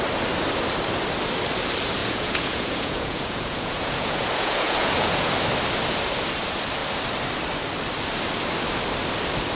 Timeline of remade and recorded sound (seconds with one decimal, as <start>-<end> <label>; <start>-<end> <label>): 0.0-2.0 recorded; 2.0-5.3 remade; 5.3-9.6 recorded

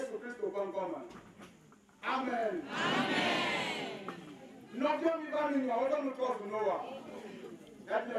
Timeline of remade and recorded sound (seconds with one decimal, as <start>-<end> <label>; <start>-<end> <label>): 0.0-8.2 recorded

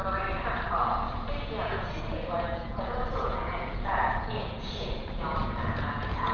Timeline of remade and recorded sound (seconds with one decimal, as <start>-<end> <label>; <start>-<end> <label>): 0.0-0.7 recorded; 0.7-6.3 remade

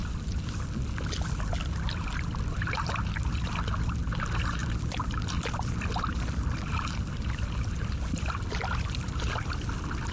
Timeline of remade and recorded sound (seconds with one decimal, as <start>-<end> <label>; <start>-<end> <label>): 0.0-0.7 remade; 0.7-4.6 recorded; 4.6-9.7 remade; 9.7-10.1 recorded

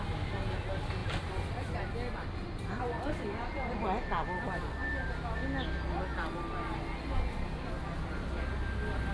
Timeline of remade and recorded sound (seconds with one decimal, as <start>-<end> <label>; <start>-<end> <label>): 0.0-9.1 recorded

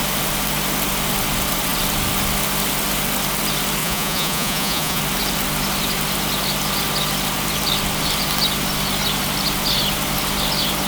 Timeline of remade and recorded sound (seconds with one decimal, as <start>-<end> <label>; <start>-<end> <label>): 0.0-3.8 recorded; 3.8-5.0 remade; 5.0-10.9 recorded

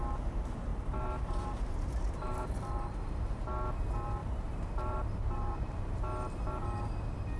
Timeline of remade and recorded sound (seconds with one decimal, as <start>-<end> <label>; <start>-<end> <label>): 0.0-0.7 recorded; 0.7-3.4 remade; 3.4-4.2 recorded; 4.2-6.0 remade; 6.0-7.4 recorded

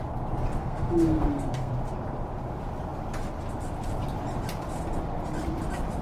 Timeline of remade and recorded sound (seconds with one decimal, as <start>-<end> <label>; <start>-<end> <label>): 0.0-0.6 recorded; 0.6-1.7 remade; 1.7-6.0 recorded